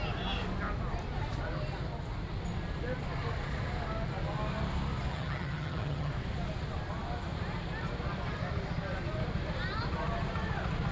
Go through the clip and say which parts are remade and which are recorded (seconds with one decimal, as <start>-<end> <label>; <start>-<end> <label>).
0.0-5.1 recorded; 5.1-6.1 remade; 6.1-10.9 recorded